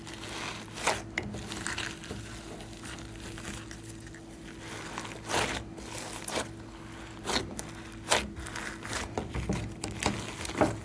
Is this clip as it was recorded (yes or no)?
yes